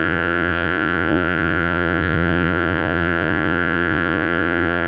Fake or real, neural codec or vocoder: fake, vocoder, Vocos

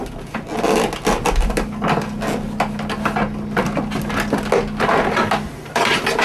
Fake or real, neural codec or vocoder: real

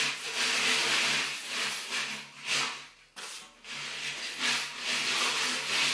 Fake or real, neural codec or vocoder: real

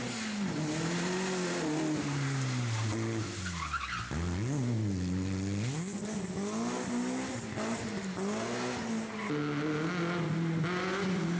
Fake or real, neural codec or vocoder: real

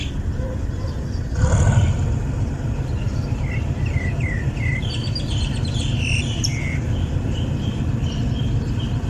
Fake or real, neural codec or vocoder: real